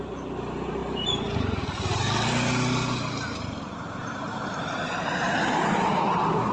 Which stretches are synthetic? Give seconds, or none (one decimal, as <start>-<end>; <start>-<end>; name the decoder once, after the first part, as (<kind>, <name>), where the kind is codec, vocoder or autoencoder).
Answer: none